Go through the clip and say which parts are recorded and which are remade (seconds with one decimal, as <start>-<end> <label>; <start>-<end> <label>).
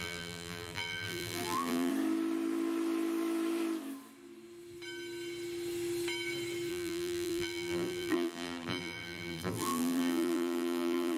0.0-1.9 remade; 1.9-6.7 recorded; 6.7-11.2 remade